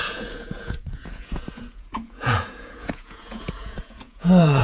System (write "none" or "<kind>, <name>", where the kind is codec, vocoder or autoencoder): vocoder, Vocos